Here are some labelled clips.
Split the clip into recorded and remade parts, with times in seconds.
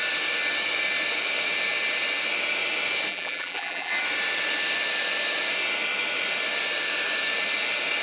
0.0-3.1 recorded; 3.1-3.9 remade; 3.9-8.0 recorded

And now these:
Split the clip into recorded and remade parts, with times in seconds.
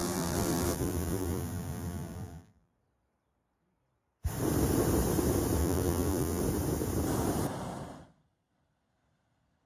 0.0-2.7 remade; 2.7-5.6 recorded; 5.6-6.4 remade; 6.4-9.7 recorded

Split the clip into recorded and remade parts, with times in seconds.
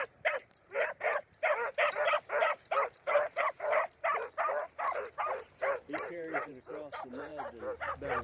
0.0-7.3 remade; 7.3-8.2 recorded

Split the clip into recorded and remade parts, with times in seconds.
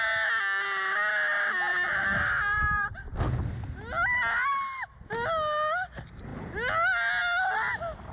0.0-1.7 recorded; 1.7-3.2 remade; 3.2-8.1 recorded